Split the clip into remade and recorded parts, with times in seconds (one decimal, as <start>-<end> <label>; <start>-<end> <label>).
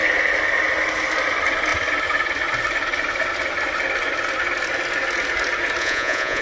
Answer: 0.0-5.8 recorded; 5.8-6.4 remade